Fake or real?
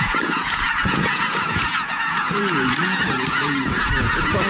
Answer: fake